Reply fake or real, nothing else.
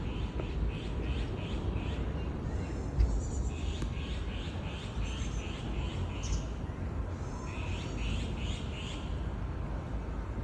real